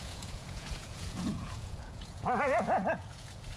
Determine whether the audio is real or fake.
fake